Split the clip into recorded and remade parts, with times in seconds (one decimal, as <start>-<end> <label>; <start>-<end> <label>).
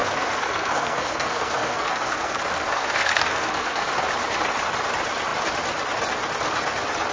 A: 0.0-4.1 remade; 4.1-7.1 recorded